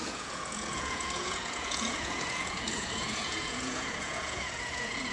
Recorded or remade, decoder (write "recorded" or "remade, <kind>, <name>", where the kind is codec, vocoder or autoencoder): remade, vocoder, Vocos